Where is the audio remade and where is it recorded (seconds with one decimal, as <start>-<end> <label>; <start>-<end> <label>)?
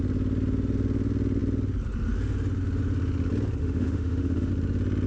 0.0-3.6 recorded; 3.6-4.5 remade; 4.5-5.1 recorded